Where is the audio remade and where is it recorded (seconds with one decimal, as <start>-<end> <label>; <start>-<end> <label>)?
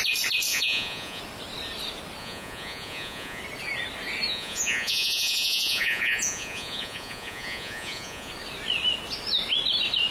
0.0-0.5 recorded; 0.5-1.2 remade; 1.2-2.2 recorded; 2.2-3.4 remade; 3.4-4.3 recorded; 4.3-8.3 remade; 8.3-10.1 recorded